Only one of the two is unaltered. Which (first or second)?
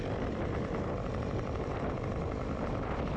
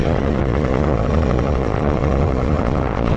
first